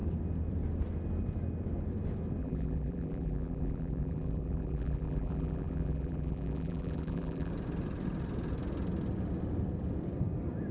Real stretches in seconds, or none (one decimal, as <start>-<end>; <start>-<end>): 0.0-2.4; 7.5-10.7